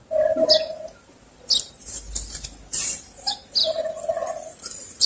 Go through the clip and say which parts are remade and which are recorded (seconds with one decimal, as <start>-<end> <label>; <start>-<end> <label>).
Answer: 0.0-3.6 recorded; 3.6-5.1 remade